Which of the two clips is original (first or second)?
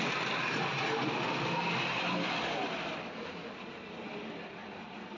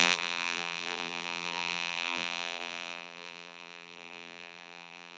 first